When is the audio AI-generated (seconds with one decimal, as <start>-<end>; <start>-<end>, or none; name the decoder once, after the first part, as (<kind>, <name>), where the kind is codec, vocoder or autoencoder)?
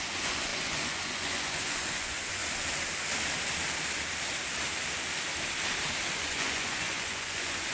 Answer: 0.0-2.4 (vocoder, Vocos); 6.2-7.7